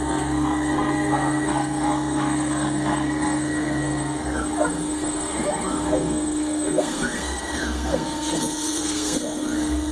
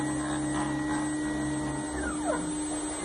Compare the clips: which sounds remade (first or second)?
first